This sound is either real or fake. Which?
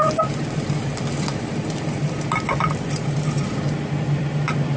real